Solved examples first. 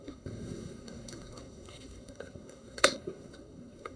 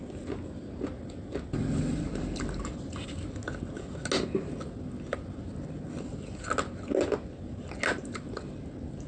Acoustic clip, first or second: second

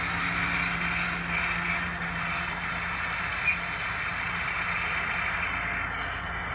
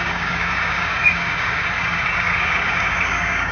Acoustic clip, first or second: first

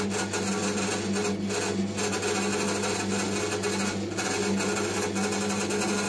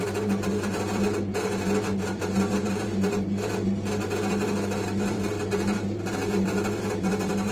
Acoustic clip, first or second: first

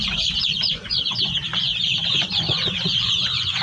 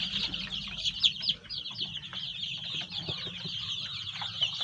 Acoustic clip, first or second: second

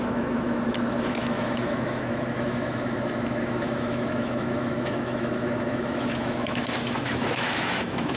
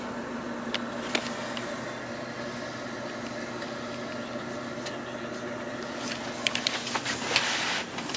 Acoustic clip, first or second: second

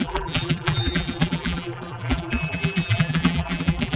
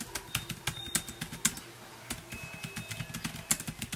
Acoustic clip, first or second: second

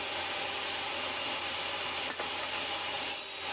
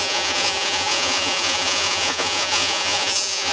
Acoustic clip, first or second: first